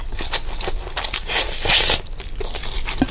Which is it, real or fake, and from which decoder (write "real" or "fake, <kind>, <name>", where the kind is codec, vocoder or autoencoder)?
real